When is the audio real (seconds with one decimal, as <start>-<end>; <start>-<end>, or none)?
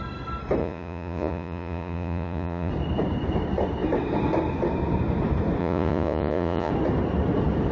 0.0-0.6; 2.7-5.6; 6.7-7.7